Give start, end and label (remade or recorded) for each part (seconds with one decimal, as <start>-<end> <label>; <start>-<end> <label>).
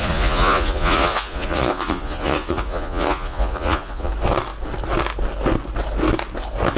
0.0-4.1 remade; 4.1-6.8 recorded